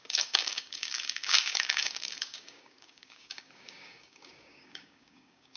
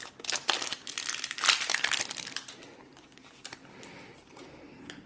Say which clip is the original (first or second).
second